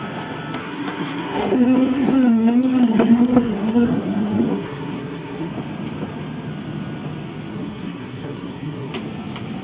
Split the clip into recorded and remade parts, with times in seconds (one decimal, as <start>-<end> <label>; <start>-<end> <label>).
0.0-0.6 recorded; 0.6-5.5 remade; 5.5-7.5 recorded; 7.5-8.9 remade; 8.9-9.6 recorded